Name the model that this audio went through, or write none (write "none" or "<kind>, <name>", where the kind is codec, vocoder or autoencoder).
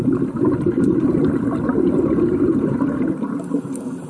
none